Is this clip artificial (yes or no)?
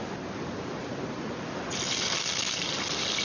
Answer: no